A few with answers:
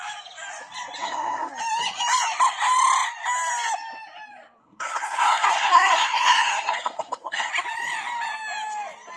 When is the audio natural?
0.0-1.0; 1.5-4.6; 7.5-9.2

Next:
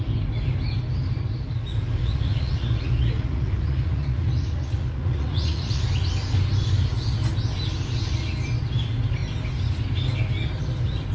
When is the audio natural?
0.0-2.0; 5.8-11.1

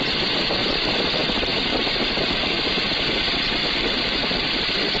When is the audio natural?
0.0-0.6; 1.2-1.7; 2.7-3.6; 4.4-5.0

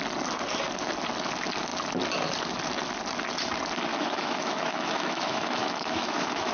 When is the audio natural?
0.0-3.9

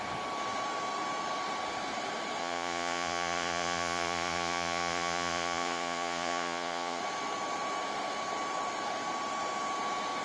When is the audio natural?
0.0-2.4; 7.0-10.2